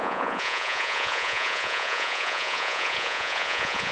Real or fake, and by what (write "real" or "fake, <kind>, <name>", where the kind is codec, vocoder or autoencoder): fake, vocoder, Vocos